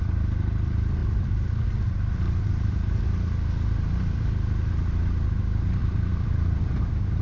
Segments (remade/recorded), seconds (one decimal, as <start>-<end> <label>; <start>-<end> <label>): 0.0-1.0 recorded; 1.0-2.5 remade; 2.5-5.8 recorded; 5.8-6.8 remade; 6.8-7.2 recorded